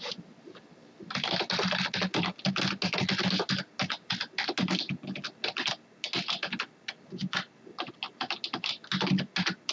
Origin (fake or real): real